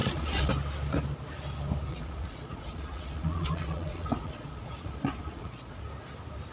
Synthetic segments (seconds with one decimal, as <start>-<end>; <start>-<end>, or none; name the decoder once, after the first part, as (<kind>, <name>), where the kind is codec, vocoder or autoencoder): 0.0-0.5 (vocoder, Vocos); 1.9-5.8